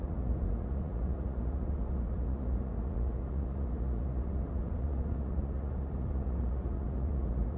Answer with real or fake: fake